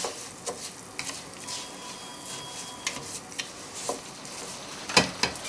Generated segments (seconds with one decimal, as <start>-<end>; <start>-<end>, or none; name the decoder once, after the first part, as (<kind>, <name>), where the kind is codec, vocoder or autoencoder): none